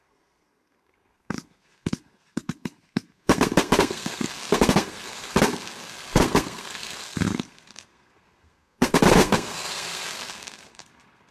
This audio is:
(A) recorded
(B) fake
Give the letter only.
B